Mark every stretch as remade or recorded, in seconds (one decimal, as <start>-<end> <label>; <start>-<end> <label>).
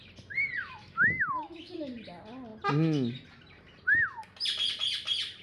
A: 0.0-0.6 recorded; 0.6-1.9 remade; 1.9-5.4 recorded